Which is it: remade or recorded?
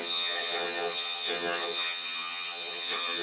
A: remade